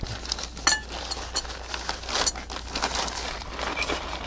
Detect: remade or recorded recorded